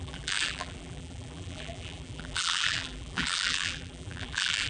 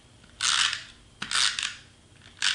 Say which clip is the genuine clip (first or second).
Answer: second